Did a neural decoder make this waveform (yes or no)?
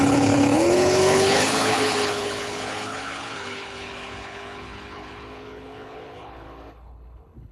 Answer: yes